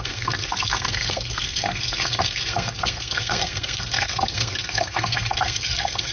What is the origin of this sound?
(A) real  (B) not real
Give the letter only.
B